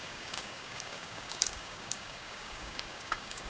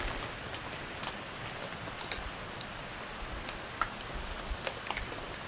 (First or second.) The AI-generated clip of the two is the first